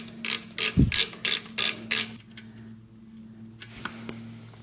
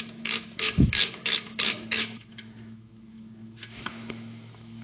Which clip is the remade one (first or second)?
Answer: second